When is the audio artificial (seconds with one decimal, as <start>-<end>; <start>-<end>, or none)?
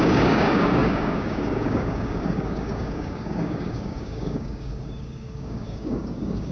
0.0-6.5